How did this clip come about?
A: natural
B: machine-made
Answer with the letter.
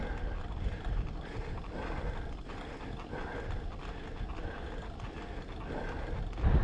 A